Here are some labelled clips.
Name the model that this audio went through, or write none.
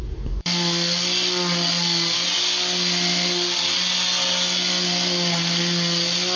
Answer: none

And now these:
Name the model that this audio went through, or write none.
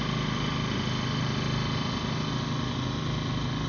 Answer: none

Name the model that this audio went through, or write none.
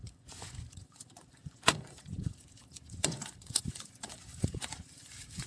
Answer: vocoder, Vocos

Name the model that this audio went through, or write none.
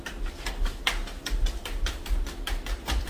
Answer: none